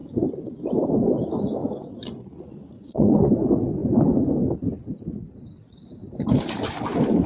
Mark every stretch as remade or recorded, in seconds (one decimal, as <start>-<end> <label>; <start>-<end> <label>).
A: 0.0-1.6 recorded; 1.6-3.3 remade; 3.3-7.3 recorded